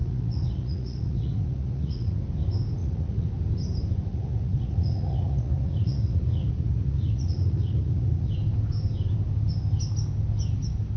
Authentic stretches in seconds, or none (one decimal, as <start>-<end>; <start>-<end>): 2.2-2.8; 3.3-4.1; 8.3-11.0

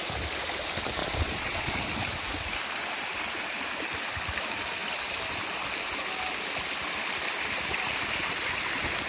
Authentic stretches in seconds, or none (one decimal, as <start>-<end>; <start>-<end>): 0.0-1.0; 1.8-9.1

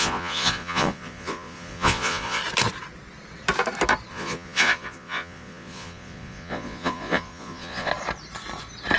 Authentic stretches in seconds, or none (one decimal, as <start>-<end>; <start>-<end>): 2.4-4.1; 7.9-9.0